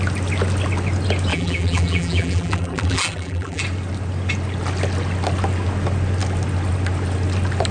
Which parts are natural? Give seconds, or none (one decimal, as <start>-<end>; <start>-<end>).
0.0-1.3; 3.6-7.7

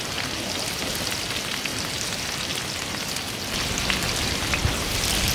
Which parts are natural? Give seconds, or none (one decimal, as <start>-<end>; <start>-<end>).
0.0-5.3

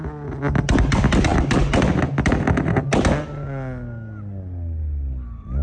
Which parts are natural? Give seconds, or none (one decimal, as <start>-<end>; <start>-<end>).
0.0-5.6

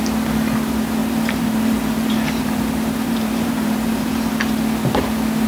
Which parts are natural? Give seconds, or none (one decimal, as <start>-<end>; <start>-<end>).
0.0-1.0; 4.3-5.5

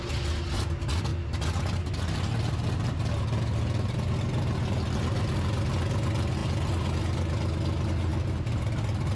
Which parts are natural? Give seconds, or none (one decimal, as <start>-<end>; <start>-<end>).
0.0-9.2